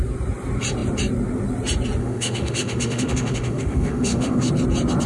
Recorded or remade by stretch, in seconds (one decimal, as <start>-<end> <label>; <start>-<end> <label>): 0.0-2.0 recorded; 2.0-4.5 remade; 4.5-5.1 recorded